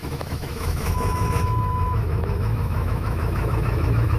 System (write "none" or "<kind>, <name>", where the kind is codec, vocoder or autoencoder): autoencoder, DAC-VAE